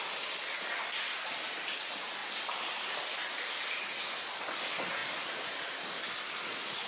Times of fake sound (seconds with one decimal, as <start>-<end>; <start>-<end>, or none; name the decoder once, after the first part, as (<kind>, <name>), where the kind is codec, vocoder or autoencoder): 2.2-3.8 (vocoder, BigVGAN v2)